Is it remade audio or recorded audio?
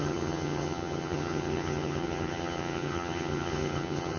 remade